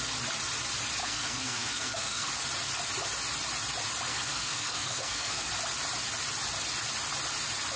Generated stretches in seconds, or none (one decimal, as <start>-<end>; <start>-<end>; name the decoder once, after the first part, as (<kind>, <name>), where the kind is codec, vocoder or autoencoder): 1.0-2.3 (codec, SNAC); 4.1-5.5